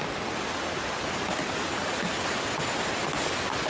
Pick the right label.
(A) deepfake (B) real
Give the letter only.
B